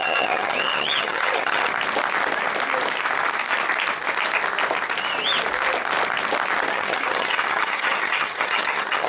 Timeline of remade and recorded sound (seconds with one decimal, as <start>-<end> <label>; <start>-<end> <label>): 0.0-1.7 remade; 1.7-6.7 recorded; 6.7-9.1 remade